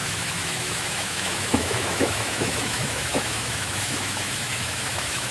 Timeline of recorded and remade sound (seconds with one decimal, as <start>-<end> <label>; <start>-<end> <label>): 0.0-5.3 remade